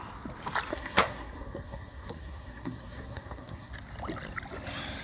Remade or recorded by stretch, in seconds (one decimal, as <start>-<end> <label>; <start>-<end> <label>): 0.0-0.7 recorded; 0.7-3.7 remade; 3.7-5.0 recorded